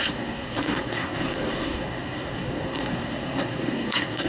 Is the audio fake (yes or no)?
yes